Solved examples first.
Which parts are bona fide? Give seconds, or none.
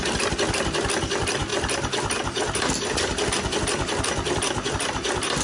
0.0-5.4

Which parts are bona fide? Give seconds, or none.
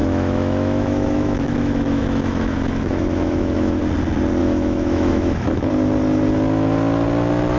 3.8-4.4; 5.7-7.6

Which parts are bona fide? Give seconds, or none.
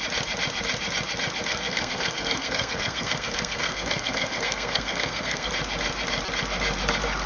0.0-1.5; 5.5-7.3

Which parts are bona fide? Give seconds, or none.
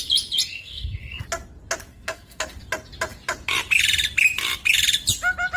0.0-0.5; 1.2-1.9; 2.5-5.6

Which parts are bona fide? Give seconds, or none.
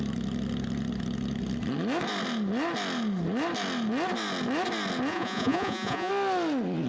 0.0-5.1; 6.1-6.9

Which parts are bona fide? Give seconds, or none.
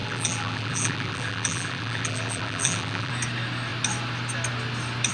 3.1-5.1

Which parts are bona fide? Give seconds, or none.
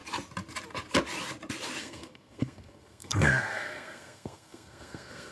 0.0-1.8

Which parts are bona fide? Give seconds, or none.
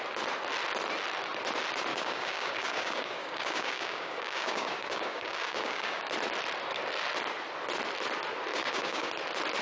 0.0-1.9; 6.0-8.5; 9.1-9.6